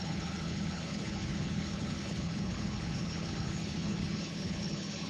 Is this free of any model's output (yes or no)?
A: no